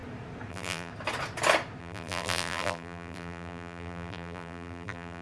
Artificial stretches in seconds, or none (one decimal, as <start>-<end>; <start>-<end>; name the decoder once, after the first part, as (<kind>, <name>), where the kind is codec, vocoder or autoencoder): 0.5-0.9 (vocoder, BigVGAN v2); 1.8-5.2